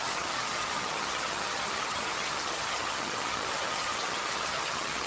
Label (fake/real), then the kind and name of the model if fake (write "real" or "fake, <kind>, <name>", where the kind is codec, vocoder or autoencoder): fake, vocoder, HiFi-GAN